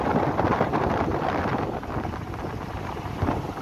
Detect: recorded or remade recorded